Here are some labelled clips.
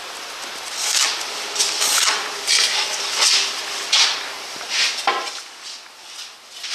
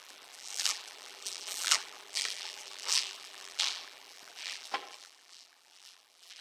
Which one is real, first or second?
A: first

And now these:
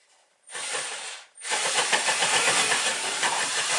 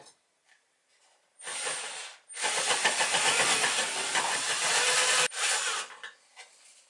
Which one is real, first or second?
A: second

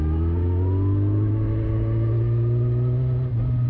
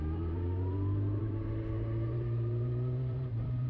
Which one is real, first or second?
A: first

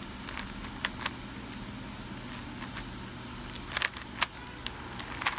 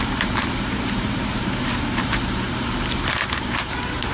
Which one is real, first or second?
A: first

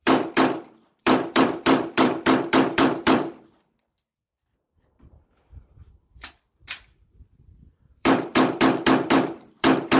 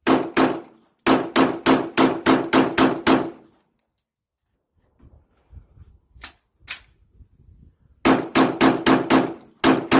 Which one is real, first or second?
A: second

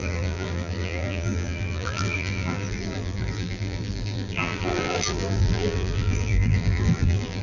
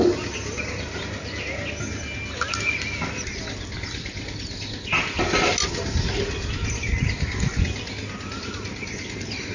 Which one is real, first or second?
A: second